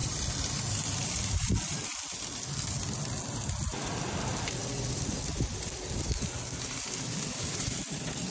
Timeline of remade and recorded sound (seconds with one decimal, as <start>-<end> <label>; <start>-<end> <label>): 0.0-1.4 remade; 1.4-4.6 recorded; 4.6-5.9 remade; 5.9-8.3 recorded